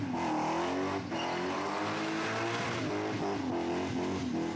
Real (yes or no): yes